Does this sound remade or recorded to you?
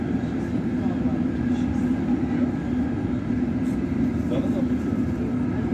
recorded